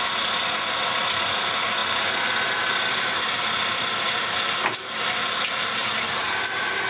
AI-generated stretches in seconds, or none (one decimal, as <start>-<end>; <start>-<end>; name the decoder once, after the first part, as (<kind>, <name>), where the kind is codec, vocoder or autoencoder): none